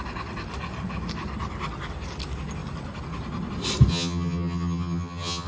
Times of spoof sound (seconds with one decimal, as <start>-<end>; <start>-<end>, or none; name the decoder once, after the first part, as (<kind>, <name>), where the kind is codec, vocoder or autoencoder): 3.9-5.5 (vocoder, HiFi-GAN)